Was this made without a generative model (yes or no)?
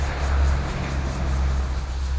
yes